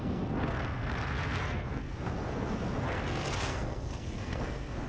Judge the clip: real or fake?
fake